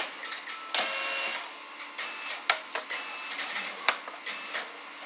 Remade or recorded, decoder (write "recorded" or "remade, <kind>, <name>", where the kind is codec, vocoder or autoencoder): recorded